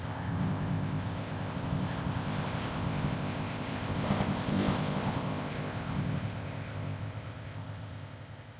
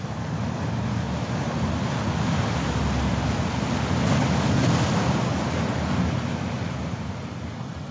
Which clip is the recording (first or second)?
second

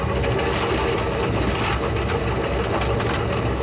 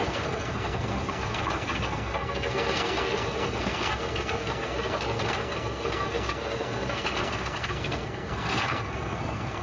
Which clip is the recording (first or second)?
first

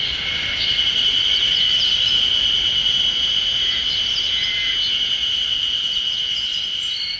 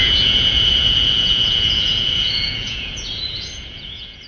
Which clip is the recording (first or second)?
first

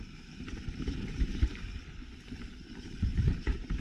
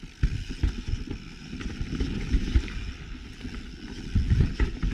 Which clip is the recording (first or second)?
second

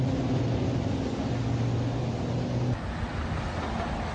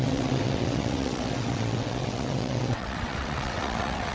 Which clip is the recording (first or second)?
first